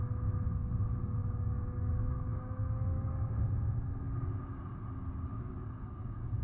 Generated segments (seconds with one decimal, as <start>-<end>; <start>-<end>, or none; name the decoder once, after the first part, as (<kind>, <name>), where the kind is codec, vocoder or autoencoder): 1.2-3.1 (codec, DAC); 5.3-6.4